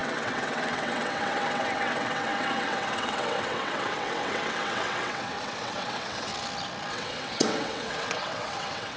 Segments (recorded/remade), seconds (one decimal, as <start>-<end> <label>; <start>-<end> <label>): 0.0-6.3 remade; 6.3-6.9 recorded; 6.9-9.0 remade